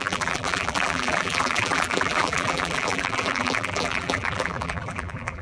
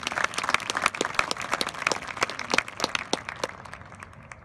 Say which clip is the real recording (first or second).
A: second